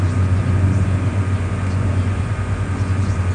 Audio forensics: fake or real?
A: fake